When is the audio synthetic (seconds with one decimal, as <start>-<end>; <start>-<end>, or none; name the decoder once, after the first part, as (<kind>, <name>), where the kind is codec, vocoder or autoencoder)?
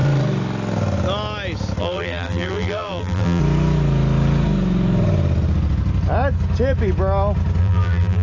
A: 1.8-3.4 (vocoder, BigVGAN v2); 7.6-8.2